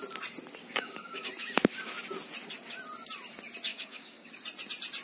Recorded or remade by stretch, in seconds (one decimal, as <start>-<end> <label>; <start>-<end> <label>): 0.0-0.6 recorded; 0.6-1.3 remade; 1.3-3.7 recorded; 3.7-4.3 remade; 4.3-5.0 recorded